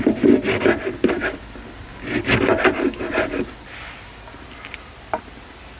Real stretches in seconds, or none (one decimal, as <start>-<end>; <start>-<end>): 0.0-1.2; 3.7-5.8